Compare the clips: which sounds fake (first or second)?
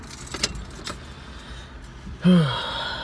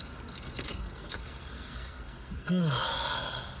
second